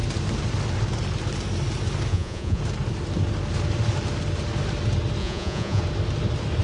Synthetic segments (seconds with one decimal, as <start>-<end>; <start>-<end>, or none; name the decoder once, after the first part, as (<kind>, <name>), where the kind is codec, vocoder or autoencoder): 2.1-2.6 (vocoder, Vocos); 5.2-5.8